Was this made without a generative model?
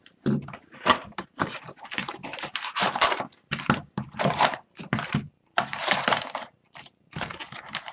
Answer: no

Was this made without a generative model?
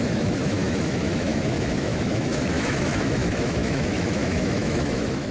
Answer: no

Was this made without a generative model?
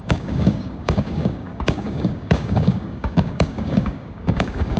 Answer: no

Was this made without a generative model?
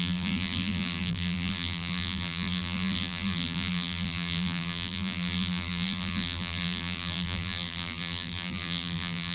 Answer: no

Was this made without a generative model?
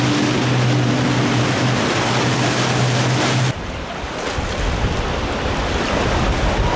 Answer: yes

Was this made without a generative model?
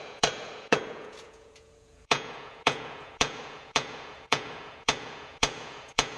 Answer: no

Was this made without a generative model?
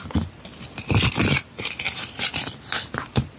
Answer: yes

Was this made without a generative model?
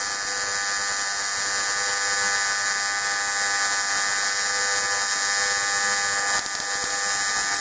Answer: yes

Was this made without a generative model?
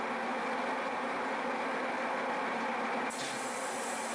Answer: yes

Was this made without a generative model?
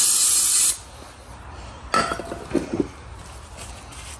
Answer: yes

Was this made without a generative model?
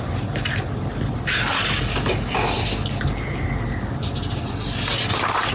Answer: yes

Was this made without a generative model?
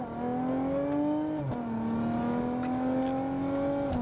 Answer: yes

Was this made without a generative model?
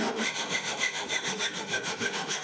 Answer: no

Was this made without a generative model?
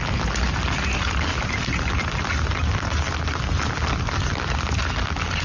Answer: yes